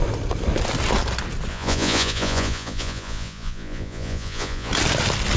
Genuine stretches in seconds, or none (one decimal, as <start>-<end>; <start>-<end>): 0.0-1.5; 4.7-5.4